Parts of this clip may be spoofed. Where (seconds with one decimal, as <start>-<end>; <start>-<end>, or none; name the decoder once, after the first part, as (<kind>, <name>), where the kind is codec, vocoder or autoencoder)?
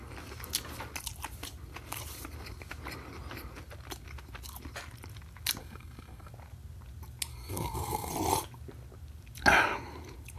5.6-6.3 (codec, SNAC); 7.3-8.1